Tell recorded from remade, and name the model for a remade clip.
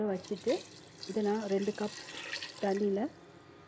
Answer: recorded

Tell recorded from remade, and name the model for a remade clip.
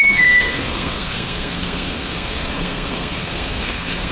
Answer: remade, codec, SNAC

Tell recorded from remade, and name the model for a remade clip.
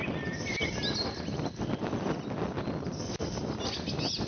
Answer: recorded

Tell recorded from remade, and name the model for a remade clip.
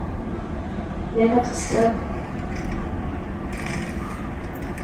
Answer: remade, vocoder, BigVGAN v2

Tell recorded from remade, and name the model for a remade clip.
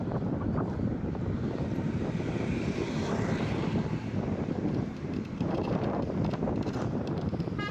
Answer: remade, vocoder, BigVGAN v2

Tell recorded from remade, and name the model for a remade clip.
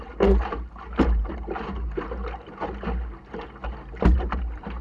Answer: remade, vocoder, BigVGAN v2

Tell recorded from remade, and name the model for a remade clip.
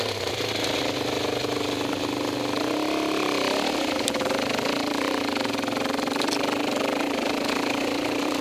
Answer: recorded